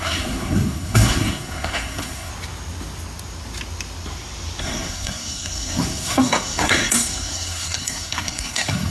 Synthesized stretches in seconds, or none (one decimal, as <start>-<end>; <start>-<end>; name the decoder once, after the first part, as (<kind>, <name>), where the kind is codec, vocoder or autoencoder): 0.0-2.3 (codec, SNAC); 4.6-8.9